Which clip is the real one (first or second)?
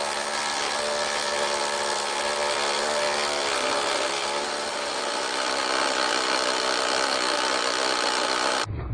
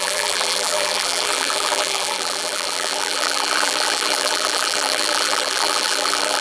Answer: first